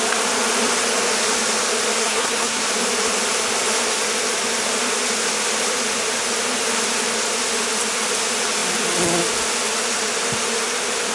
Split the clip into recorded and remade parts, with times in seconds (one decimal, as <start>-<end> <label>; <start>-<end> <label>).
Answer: 0.0-2.0 recorded; 2.0-2.6 remade; 2.6-11.1 recorded